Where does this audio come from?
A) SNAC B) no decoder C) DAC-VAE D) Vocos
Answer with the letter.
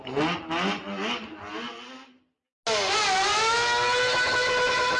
B